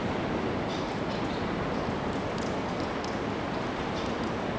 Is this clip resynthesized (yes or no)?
no